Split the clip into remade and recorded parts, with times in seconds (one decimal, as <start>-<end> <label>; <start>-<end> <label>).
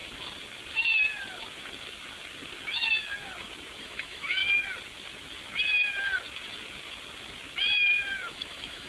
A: 0.0-3.8 recorded; 3.8-4.4 remade; 4.4-8.3 recorded; 8.3-8.9 remade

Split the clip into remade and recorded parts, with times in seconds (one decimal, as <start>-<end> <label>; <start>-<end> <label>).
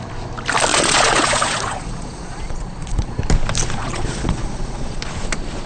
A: 0.0-0.7 recorded; 0.7-3.2 remade; 3.2-3.8 recorded; 3.8-5.0 remade; 5.0-5.7 recorded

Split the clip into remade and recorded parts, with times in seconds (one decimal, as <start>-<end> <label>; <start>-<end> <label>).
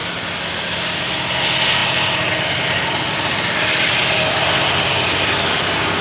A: 0.0-6.0 recorded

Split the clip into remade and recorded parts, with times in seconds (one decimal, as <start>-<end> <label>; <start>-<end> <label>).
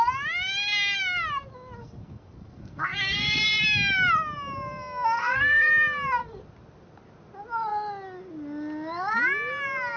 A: 0.0-1.8 recorded; 1.8-3.6 remade; 3.6-5.2 recorded; 5.2-5.7 remade; 5.7-10.0 recorded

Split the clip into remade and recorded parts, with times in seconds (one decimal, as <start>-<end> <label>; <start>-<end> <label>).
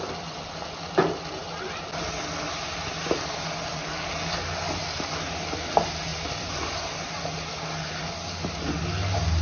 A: 0.0-6.1 recorded; 6.1-7.0 remade; 7.0-9.4 recorded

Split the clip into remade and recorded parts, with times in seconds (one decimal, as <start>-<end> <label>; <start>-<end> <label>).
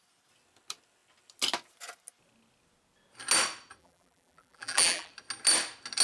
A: 0.0-3.8 recorded; 3.8-5.1 remade; 5.1-6.0 recorded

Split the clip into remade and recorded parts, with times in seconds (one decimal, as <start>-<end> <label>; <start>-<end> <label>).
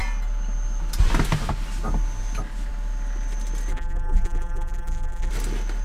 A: 0.0-3.7 recorded; 3.7-5.3 remade; 5.3-5.8 recorded